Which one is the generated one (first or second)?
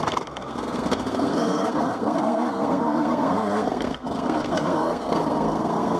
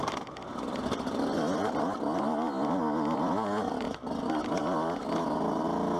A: first